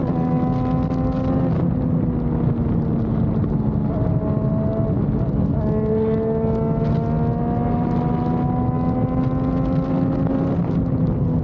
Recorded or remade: recorded